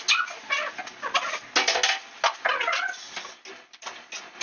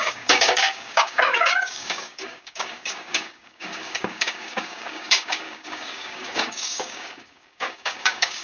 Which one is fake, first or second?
second